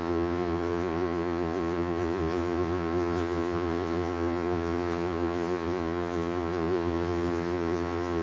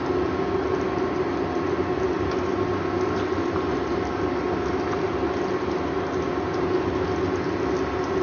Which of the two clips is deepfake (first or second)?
first